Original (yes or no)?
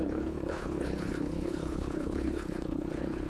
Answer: no